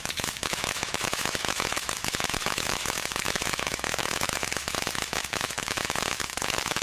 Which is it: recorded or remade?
remade